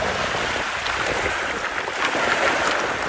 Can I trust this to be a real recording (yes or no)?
yes